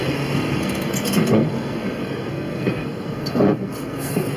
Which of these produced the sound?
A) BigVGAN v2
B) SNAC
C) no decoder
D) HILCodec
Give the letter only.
B